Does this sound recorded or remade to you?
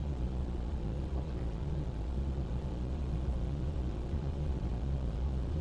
remade